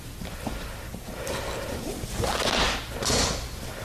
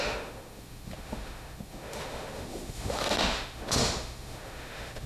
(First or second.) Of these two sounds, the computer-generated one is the second